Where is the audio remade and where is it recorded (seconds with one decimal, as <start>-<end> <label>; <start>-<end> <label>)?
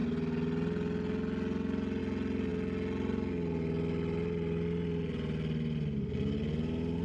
0.0-7.0 recorded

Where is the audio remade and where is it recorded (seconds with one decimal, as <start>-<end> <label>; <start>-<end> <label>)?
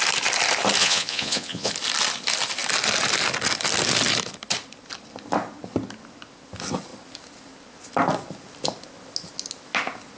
0.0-0.8 recorded; 0.8-1.7 remade; 1.7-10.2 recorded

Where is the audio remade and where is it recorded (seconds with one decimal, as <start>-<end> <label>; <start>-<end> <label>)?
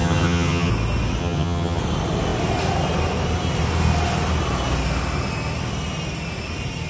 0.0-0.7 remade; 0.7-1.2 recorded; 1.2-1.8 remade; 1.8-6.9 recorded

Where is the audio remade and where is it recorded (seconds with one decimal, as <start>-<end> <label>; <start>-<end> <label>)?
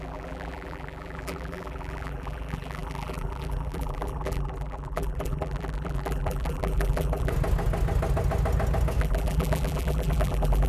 0.0-7.3 remade; 7.3-9.0 recorded; 9.0-10.7 remade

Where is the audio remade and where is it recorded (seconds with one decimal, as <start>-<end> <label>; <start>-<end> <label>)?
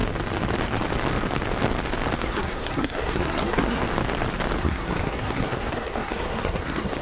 0.0-2.2 recorded; 2.2-3.8 remade; 3.8-4.6 recorded; 4.6-7.0 remade